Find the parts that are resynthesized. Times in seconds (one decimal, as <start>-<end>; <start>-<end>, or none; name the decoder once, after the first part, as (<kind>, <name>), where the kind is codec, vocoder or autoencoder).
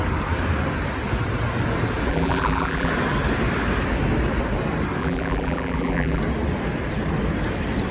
2.1-2.9 (vocoder, BigVGAN v2); 5.0-6.2